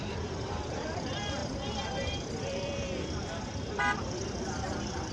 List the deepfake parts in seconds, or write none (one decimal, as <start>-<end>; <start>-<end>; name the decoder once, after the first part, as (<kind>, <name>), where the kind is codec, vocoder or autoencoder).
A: 0.0-5.1 (vocoder, BigVGAN v2)